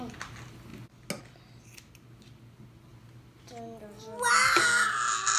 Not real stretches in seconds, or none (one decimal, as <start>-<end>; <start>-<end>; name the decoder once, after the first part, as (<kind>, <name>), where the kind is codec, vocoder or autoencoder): none